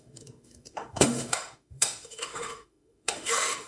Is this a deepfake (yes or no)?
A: yes